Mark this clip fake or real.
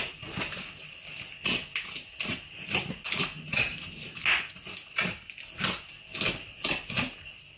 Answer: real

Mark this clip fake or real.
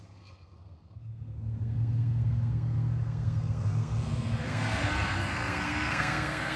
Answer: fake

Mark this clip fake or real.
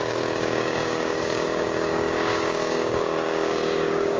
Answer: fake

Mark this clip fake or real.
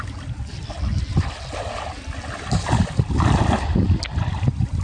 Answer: real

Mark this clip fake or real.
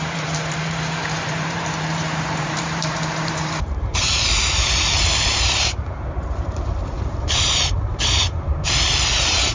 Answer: fake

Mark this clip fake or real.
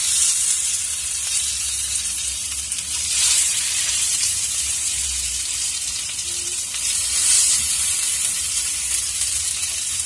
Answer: fake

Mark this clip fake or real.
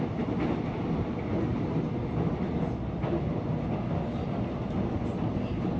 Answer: real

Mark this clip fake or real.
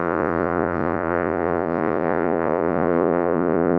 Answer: fake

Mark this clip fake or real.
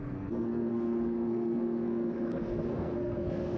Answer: fake